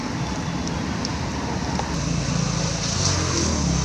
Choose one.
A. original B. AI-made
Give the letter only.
A